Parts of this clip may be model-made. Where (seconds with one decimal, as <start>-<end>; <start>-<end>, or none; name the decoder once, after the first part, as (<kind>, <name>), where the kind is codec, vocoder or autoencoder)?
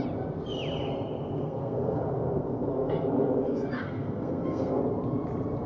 1.4-4.8 (codec, SNAC)